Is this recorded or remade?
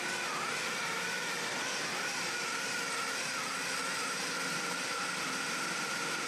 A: recorded